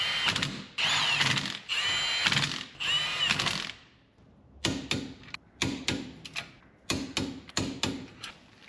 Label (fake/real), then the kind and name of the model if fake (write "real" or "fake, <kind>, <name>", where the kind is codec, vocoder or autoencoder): real